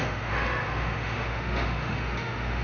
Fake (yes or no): yes